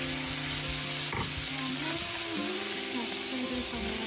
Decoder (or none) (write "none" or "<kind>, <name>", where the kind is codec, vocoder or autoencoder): none